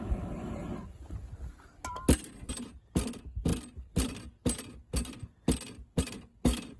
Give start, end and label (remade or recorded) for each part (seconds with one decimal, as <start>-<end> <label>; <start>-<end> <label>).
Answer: 0.0-6.8 recorded

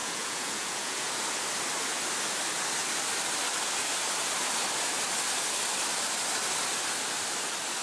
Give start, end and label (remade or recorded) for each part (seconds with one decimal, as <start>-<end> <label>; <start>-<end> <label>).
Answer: 0.0-1.1 remade; 1.1-7.8 recorded

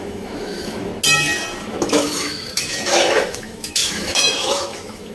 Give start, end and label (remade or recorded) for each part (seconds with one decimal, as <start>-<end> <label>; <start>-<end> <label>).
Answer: 0.0-0.9 remade; 0.9-1.6 recorded; 1.6-5.1 remade

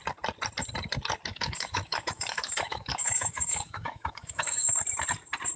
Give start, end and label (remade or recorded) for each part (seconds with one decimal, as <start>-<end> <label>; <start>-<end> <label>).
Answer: 0.0-1.3 recorded; 1.3-4.7 remade; 4.7-5.6 recorded